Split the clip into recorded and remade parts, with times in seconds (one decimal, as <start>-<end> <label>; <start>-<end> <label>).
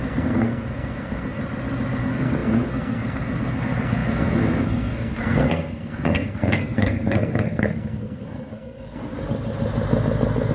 0.0-1.4 remade; 1.4-2.0 recorded; 2.0-9.0 remade; 9.0-10.5 recorded